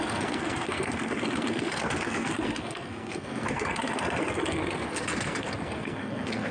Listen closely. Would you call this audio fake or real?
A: fake